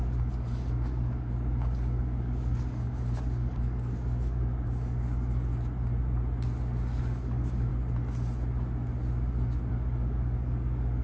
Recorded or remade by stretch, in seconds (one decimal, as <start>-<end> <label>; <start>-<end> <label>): 0.0-5.5 remade; 5.5-7.0 recorded; 7.0-7.7 remade; 7.7-9.7 recorded; 9.7-11.0 remade